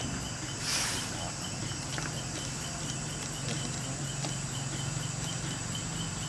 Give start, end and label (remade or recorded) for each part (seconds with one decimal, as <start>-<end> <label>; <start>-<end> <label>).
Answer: 0.0-6.3 recorded